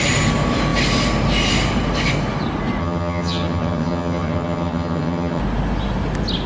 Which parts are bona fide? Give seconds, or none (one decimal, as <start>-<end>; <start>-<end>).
0.0-2.8; 5.4-6.5